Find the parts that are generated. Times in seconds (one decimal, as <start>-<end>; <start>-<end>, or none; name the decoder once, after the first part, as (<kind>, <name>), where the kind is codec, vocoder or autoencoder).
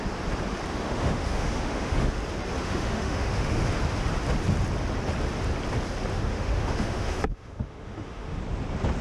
0.7-2.2 (autoencoder, DAC-VAE); 2.6-3.7; 6.1-8.4